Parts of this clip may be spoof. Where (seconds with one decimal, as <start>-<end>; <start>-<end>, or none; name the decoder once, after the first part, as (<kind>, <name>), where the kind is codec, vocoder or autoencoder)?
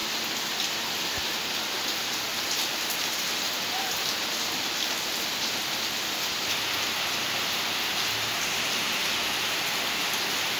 none